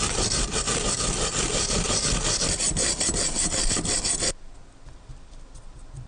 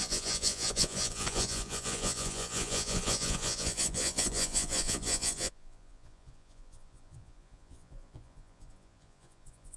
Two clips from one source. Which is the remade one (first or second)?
second